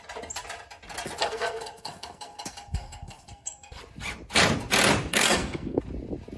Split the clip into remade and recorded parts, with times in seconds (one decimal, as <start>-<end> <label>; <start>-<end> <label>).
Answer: 0.0-1.2 recorded; 1.2-3.8 remade; 3.8-5.1 recorded; 5.1-5.8 remade; 5.8-6.4 recorded